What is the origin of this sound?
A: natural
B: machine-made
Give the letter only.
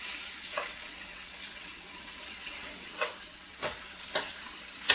B